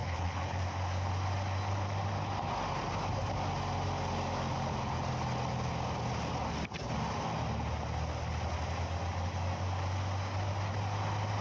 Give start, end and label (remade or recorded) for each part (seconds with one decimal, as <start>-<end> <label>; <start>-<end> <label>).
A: 0.0-0.6 remade; 0.6-11.4 recorded

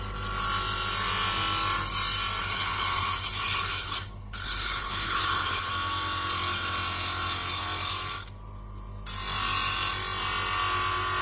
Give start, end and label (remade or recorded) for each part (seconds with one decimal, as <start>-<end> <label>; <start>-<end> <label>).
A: 0.0-2.4 recorded; 2.4-5.7 remade; 5.7-11.2 recorded

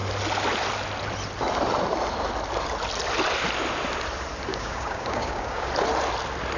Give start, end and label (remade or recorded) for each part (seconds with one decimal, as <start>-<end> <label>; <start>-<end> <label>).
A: 0.0-4.5 recorded; 4.5-5.7 remade; 5.7-6.6 recorded

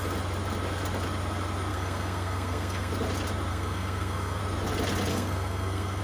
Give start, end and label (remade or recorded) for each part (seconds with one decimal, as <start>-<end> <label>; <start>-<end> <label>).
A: 0.0-1.7 recorded; 1.7-2.9 remade; 2.9-3.5 recorded; 3.5-4.4 remade; 4.4-5.1 recorded; 5.1-6.0 remade

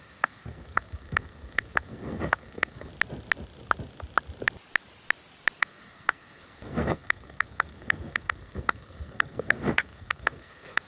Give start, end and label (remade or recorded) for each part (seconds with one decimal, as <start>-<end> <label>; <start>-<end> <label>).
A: 0.0-2.9 remade; 2.9-5.6 recorded; 5.6-10.9 remade

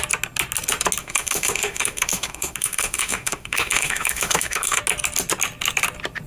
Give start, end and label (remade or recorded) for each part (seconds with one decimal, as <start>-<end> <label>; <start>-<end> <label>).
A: 0.0-1.0 recorded; 1.0-4.8 remade; 4.8-6.3 recorded

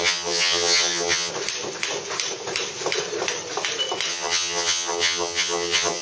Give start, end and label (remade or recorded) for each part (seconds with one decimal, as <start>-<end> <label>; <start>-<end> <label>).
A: 0.0-1.3 remade; 1.3-4.1 recorded; 4.1-6.0 remade